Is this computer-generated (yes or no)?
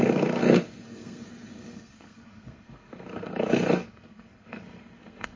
yes